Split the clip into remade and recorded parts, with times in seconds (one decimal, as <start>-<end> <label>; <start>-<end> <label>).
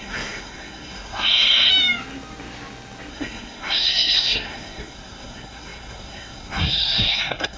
0.0-1.7 remade; 1.7-3.1 recorded; 3.1-7.6 remade